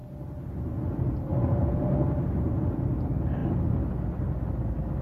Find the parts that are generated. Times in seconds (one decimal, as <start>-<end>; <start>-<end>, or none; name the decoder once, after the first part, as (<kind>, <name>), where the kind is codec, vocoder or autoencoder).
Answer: none